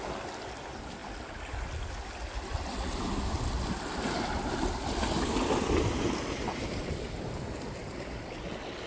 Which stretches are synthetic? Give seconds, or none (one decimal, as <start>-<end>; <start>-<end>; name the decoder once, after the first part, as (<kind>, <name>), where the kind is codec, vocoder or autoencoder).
none